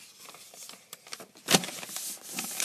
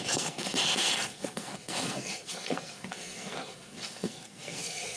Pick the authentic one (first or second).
first